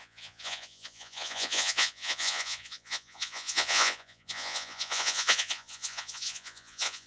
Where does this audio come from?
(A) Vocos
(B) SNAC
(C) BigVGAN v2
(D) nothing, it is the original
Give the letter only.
A